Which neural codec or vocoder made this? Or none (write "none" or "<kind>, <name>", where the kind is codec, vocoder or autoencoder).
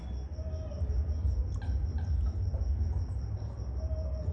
none